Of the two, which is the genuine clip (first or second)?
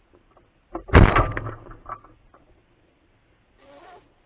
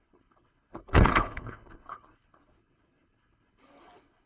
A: first